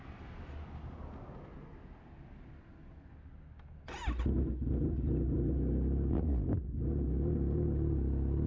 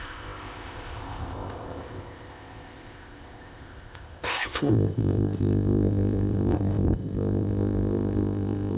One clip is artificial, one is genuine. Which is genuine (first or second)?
first